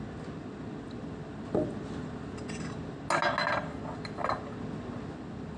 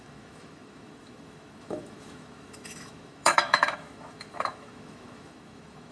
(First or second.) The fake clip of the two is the second